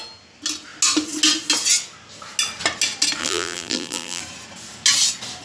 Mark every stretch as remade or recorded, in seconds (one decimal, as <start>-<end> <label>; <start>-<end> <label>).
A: 0.0-3.2 recorded; 3.2-4.2 remade; 4.2-5.4 recorded